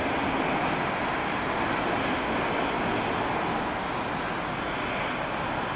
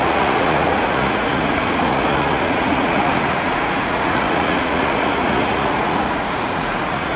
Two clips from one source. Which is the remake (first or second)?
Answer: second